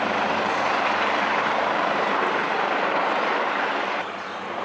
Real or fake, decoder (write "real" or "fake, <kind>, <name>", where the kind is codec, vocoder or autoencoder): fake, vocoder, BigVGAN v2